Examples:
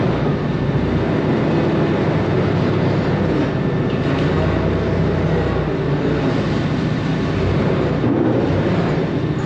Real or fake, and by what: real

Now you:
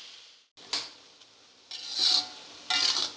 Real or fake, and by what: real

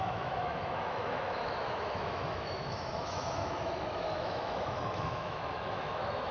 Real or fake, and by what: fake, autoencoder, DAC-VAE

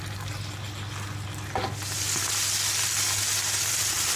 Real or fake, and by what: real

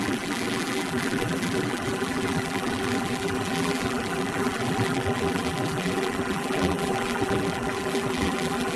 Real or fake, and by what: fake, vocoder, BigVGAN v2